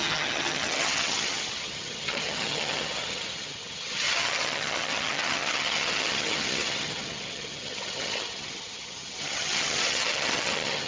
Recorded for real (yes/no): no